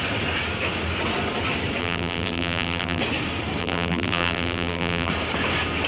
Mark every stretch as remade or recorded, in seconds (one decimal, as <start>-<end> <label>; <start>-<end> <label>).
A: 0.0-1.8 recorded; 1.8-3.0 remade; 3.0-3.6 recorded; 3.6-5.1 remade; 5.1-5.9 recorded